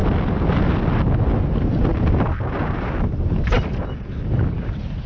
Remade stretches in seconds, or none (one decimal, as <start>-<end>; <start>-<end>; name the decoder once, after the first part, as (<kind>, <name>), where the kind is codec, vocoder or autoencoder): none